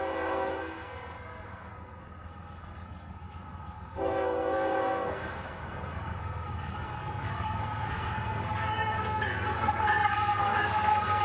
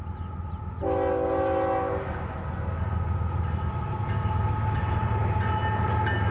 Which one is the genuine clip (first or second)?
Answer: second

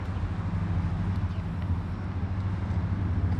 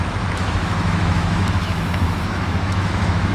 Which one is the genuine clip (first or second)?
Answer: first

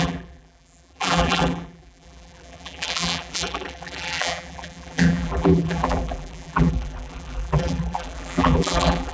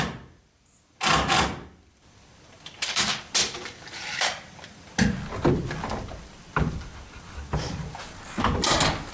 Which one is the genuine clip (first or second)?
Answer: second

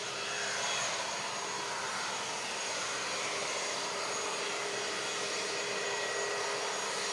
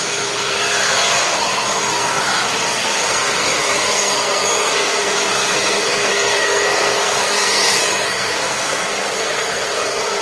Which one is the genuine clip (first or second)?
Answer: first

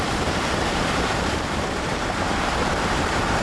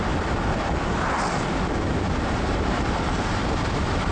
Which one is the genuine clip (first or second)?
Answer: second